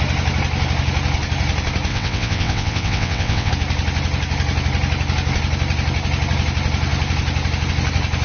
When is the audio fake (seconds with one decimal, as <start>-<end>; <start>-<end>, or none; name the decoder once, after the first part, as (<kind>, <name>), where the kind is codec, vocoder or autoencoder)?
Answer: 1.9-3.5 (vocoder, WaveNeXt)